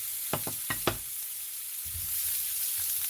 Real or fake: real